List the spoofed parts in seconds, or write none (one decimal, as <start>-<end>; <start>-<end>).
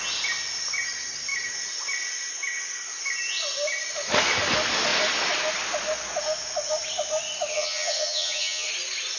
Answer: 7.5-8.7